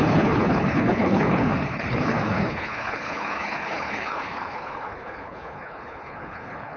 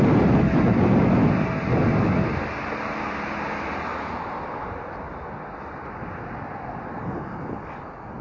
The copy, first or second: first